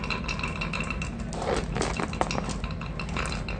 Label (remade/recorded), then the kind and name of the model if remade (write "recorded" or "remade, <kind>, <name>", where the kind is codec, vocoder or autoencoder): recorded